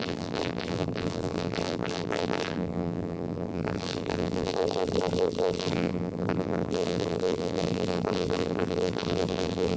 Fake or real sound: fake